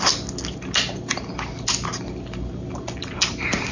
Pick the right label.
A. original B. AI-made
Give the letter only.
A